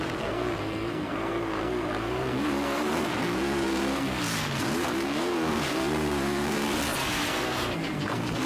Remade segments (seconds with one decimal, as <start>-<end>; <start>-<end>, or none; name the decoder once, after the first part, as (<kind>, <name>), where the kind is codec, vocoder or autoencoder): 0.0-8.5 (codec, SNAC)